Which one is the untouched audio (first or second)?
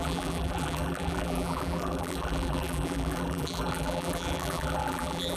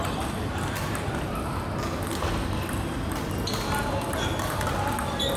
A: second